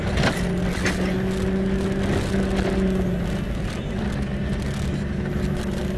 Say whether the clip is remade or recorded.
recorded